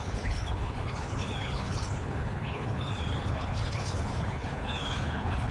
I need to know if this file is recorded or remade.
remade